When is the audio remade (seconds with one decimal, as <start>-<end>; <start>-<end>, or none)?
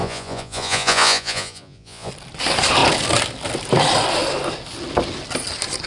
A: 0.0-2.1